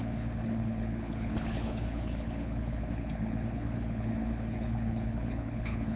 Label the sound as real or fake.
fake